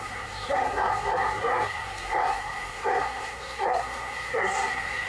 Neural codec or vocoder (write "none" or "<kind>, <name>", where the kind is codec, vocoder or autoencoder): codec, SNAC